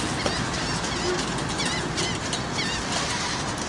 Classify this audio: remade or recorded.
recorded